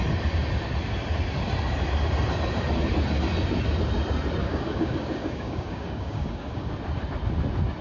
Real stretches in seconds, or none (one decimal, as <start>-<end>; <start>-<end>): 0.0-4.4; 6.7-7.8